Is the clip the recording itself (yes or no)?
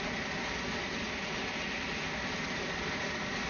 yes